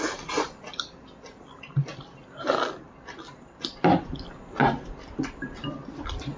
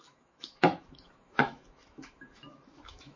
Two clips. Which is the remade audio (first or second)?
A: second